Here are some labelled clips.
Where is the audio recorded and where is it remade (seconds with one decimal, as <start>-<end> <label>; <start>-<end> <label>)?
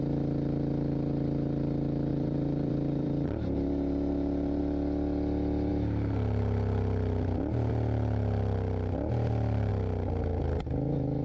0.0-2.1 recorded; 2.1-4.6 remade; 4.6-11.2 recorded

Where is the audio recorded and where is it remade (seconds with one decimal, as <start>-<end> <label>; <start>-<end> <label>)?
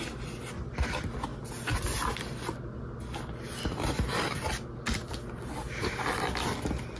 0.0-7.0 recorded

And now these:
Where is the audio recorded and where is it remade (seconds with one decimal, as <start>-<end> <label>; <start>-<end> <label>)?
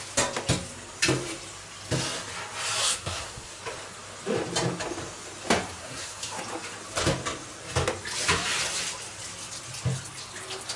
0.0-2.8 recorded; 2.8-3.6 remade; 3.6-5.8 recorded; 5.8-6.4 remade; 6.4-10.8 recorded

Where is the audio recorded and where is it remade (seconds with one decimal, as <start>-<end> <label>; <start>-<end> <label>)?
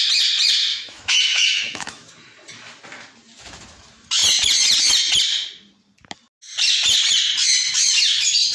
0.0-0.7 recorded; 0.7-2.1 remade; 2.1-8.5 recorded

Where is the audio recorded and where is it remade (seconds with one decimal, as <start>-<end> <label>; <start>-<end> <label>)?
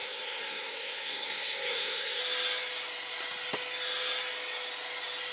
0.0-2.2 remade; 2.2-5.3 recorded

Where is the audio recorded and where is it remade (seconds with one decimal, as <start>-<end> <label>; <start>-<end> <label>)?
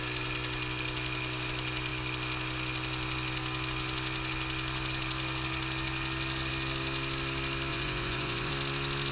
0.0-7.7 recorded; 7.7-8.5 remade; 8.5-9.1 recorded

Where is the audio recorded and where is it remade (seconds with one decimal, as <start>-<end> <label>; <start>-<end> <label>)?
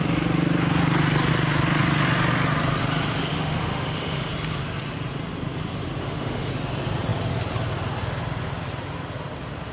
0.0-3.3 recorded; 3.3-4.3 remade; 4.3-6.0 recorded; 6.0-6.5 remade; 6.5-9.7 recorded